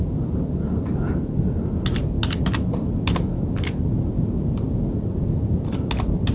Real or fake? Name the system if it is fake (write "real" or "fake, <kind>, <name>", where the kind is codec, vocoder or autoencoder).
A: real